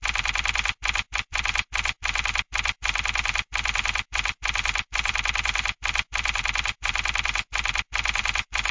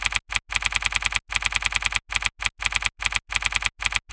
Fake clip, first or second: first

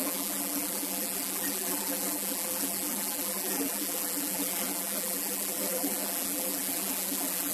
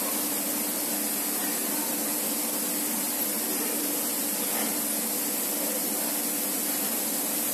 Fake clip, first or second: first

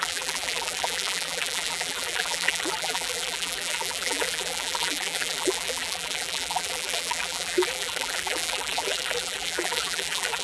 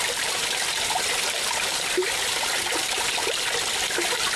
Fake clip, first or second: first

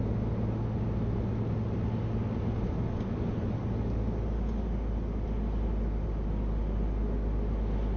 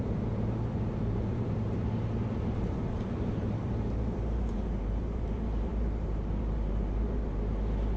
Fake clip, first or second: second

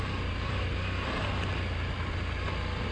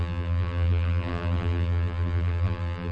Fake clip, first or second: second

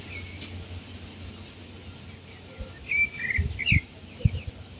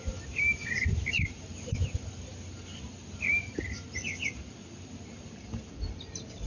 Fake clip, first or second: second